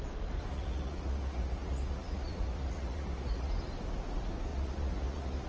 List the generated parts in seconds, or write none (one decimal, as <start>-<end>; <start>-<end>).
0.5-3.5; 4.5-5.5